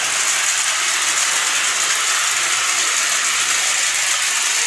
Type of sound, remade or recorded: recorded